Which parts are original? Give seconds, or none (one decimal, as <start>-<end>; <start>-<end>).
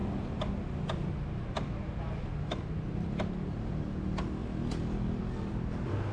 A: 0.0-6.1